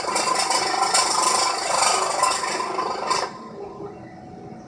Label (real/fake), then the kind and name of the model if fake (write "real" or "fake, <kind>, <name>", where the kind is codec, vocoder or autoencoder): real